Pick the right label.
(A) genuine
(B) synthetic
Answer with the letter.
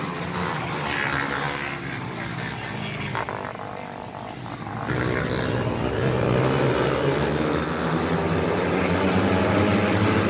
A